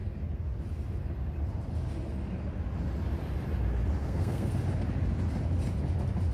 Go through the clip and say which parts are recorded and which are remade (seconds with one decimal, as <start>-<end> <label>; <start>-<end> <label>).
0.0-4.0 recorded; 4.0-4.5 remade; 4.5-6.3 recorded